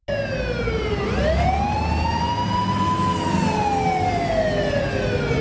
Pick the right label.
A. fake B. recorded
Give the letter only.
B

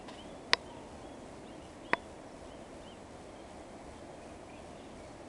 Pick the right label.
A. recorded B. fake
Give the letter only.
A